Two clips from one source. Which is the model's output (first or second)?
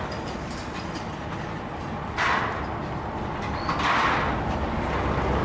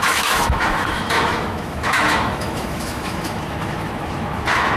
second